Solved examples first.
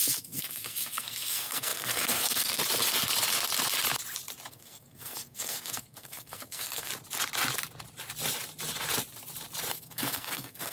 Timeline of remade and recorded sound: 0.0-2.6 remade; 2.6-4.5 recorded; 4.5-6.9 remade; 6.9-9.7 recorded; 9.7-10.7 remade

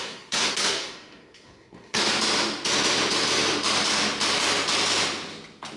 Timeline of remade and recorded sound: 0.0-2.0 remade; 2.0-5.8 recorded

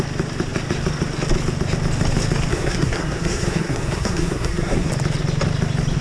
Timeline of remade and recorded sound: 0.0-2.5 recorded; 2.5-4.9 remade; 4.9-6.0 recorded